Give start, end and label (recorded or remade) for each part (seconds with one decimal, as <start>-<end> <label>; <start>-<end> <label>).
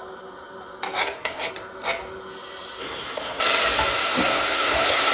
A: 0.0-1.0 recorded; 1.0-1.5 remade; 1.5-2.8 recorded; 2.8-3.4 remade; 3.4-4.1 recorded; 4.1-5.1 remade